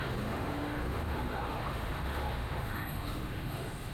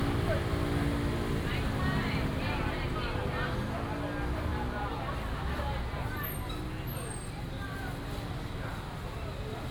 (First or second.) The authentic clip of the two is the second